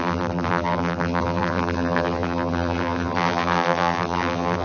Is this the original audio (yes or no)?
no